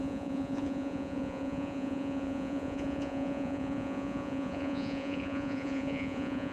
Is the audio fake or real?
fake